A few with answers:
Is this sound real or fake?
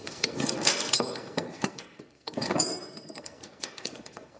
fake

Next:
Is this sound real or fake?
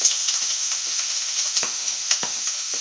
fake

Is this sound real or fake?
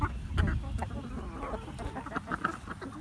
real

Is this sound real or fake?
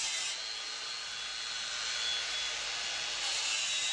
real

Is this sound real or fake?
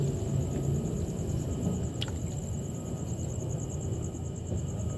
real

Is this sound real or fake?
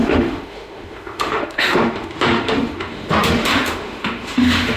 fake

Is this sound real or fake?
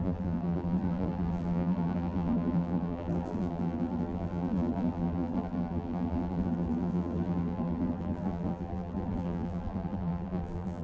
fake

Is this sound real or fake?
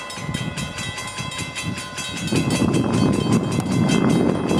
real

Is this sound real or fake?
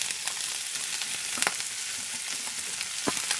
real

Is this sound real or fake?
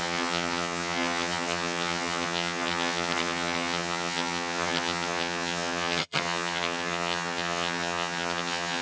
fake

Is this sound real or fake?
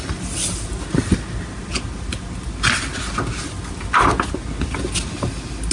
real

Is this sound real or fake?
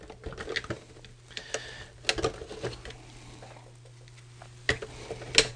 real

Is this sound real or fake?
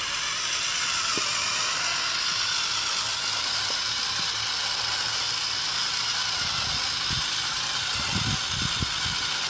real